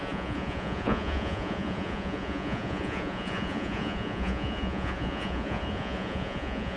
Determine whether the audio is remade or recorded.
remade